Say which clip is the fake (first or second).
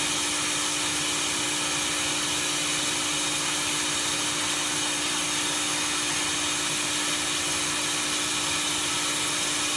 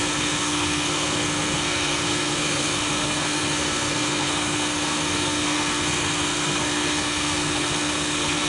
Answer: second